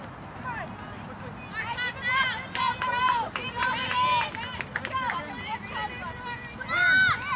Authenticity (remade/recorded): recorded